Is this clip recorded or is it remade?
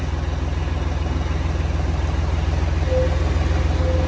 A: recorded